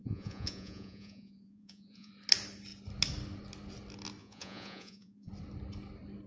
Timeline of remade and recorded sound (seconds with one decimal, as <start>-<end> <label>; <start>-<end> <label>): 0.0-2.1 remade; 2.1-4.2 recorded; 4.2-5.3 remade; 5.3-6.3 recorded